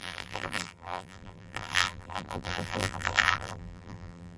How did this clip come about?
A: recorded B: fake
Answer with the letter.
B